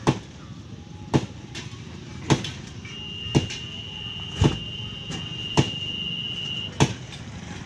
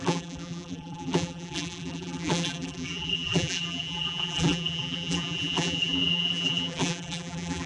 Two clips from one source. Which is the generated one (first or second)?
second